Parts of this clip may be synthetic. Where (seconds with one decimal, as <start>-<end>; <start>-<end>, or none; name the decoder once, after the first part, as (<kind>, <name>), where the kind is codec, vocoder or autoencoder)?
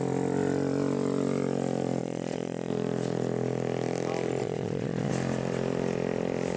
2.0-2.7 (vocoder, Vocos); 4.4-5.1